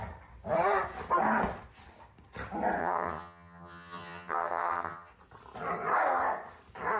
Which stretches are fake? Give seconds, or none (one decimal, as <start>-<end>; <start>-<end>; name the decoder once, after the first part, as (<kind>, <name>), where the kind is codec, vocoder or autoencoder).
2.8-5.1 (vocoder, HiFi-GAN)